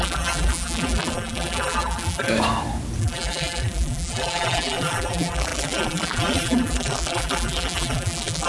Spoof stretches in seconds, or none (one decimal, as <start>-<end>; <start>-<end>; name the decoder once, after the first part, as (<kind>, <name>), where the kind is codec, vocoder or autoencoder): 0.0-2.3 (vocoder, BigVGAN v2); 3.0-8.5